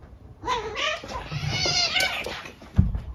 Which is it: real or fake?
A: real